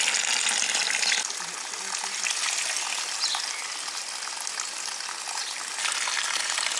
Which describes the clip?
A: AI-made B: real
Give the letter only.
B